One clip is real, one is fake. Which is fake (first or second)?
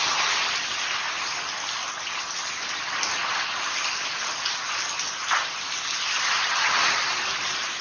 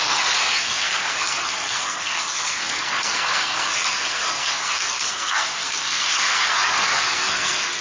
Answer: second